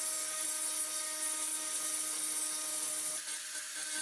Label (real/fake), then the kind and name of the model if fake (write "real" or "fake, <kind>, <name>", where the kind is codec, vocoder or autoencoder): real